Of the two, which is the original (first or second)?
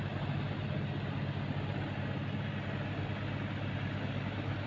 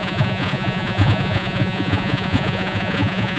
first